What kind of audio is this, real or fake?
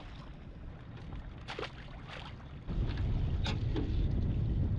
real